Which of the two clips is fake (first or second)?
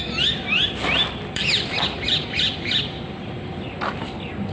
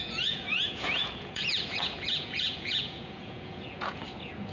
second